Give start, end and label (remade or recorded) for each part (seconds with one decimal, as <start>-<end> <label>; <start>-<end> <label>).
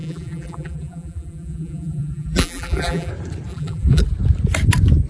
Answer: 0.0-3.1 remade; 3.1-3.5 recorded; 3.5-4.0 remade; 4.0-5.1 recorded